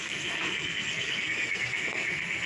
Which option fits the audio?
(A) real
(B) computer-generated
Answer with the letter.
B